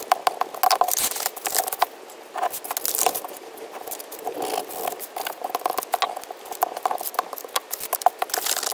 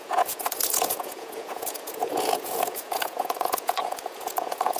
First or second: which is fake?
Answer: second